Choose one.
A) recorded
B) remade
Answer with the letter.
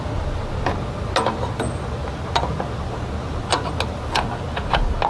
A